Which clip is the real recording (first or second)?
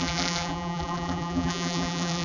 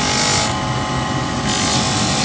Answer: second